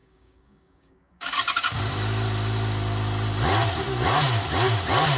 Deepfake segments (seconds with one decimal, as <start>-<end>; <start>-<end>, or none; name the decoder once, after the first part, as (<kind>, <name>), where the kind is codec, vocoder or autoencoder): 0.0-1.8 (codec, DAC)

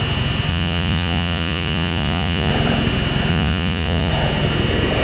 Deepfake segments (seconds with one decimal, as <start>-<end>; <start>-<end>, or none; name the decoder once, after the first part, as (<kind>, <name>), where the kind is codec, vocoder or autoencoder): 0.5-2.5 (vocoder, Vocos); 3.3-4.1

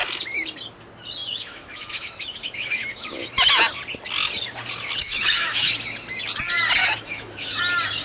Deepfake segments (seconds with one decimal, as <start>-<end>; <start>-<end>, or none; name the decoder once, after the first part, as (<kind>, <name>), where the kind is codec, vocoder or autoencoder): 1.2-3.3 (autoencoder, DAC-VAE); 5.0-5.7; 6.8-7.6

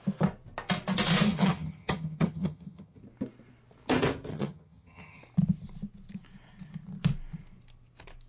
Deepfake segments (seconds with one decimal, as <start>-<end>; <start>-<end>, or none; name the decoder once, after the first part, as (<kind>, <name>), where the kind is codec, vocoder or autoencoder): 1.3-3.0 (vocoder, HiFi-GAN); 4.3-5.2

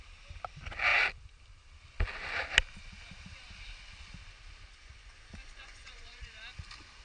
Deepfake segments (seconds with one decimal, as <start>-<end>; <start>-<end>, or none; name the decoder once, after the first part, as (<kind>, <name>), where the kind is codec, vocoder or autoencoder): 4.7-6.4 (vocoder, Vocos)